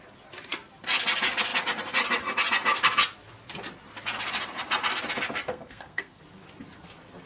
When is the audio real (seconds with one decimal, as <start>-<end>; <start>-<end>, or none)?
0.0-5.5; 6.2-7.3